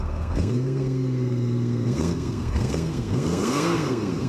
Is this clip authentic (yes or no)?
no